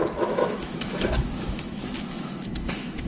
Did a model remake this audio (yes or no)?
yes